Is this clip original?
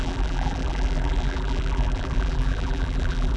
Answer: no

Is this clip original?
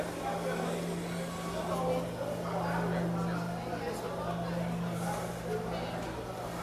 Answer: yes